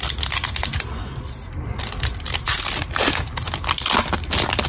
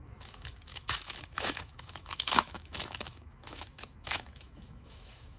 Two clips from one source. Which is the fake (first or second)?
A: second